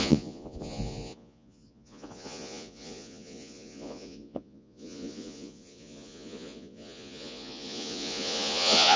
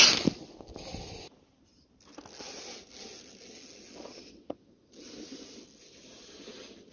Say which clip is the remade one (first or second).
first